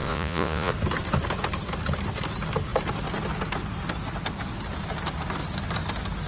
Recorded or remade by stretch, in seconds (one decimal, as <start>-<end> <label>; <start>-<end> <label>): 0.0-0.7 remade; 0.7-6.3 recorded